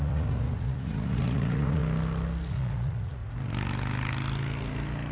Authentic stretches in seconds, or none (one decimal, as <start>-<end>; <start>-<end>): 1.8-2.5; 3.2-5.1